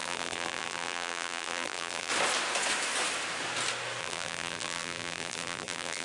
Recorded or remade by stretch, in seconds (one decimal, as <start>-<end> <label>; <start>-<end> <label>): 0.0-2.1 remade; 2.1-4.0 recorded; 4.0-6.0 remade